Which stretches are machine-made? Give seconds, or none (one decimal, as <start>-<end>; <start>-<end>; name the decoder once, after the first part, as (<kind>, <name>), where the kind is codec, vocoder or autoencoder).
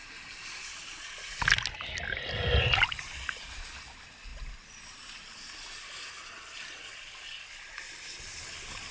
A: none